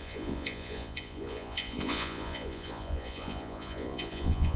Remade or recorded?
remade